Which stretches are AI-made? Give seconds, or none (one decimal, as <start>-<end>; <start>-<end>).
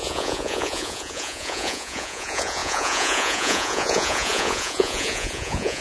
0.0-5.8